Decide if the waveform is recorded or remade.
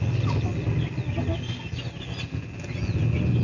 recorded